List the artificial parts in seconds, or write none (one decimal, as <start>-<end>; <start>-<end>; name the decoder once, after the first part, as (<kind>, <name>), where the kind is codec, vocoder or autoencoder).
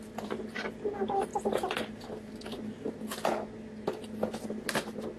none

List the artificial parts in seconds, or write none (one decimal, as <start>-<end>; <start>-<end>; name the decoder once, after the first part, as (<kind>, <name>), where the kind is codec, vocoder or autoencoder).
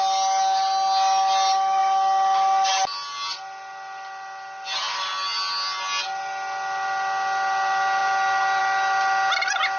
none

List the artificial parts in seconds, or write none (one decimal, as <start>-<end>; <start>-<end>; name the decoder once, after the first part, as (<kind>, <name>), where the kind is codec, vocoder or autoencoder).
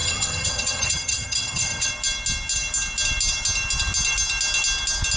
0.0-1.9 (vocoder, HiFi-GAN)